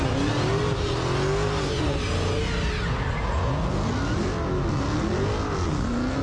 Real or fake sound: real